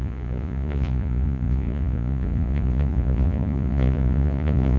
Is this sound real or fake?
fake